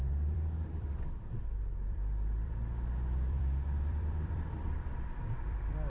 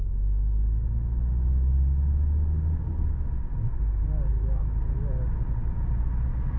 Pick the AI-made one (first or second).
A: first